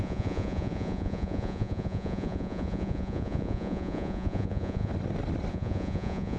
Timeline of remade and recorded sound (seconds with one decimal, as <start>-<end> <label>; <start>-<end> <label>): 0.0-4.9 remade; 4.9-5.5 recorded; 5.5-6.4 remade